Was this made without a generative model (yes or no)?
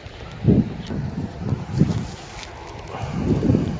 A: yes